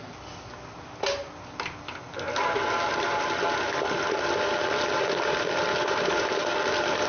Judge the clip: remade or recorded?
recorded